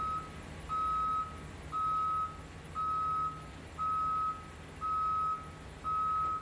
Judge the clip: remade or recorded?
recorded